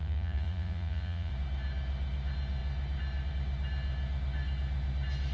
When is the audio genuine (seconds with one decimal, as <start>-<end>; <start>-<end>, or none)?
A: 1.3-5.3